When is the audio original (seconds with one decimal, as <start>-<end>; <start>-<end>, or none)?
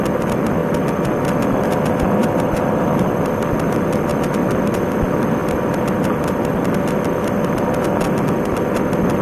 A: 0.0-2.2; 2.8-9.2